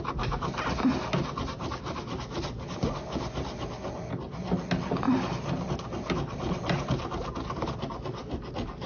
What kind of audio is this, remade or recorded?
recorded